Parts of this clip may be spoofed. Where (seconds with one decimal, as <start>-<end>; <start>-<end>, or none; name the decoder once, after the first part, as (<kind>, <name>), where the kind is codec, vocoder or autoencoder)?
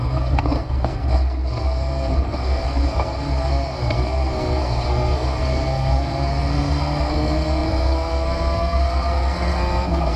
0.0-10.2 (codec, SNAC)